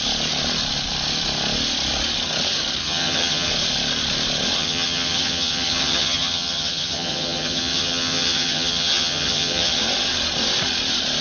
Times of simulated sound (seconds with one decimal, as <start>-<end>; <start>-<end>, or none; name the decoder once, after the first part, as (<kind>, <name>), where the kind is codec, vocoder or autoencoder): 2.8-3.5 (vocoder, HiFi-GAN); 4.6-9.8